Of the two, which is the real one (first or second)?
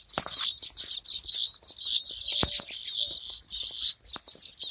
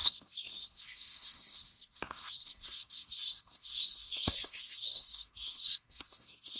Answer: first